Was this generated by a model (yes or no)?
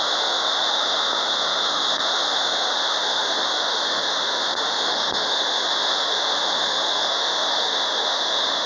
yes